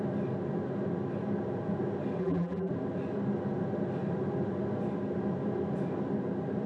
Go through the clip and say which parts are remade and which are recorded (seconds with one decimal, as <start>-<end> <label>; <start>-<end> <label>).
0.0-2.2 recorded; 2.2-2.7 remade; 2.7-6.7 recorded